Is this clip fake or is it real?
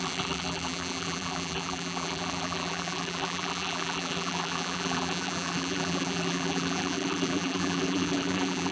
fake